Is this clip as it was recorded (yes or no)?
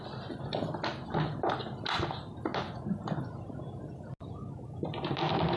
yes